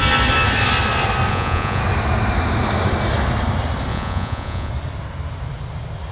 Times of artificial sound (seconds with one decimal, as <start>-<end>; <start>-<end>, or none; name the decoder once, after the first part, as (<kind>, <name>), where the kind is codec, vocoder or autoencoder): 1.3-1.8 (vocoder, Vocos); 3.9-4.7